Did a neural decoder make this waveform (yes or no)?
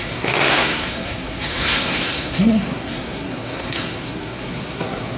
yes